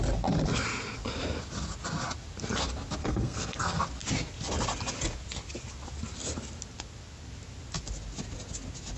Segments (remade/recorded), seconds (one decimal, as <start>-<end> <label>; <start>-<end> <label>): 0.0-3.0 recorded; 3.0-3.8 remade; 3.8-9.0 recorded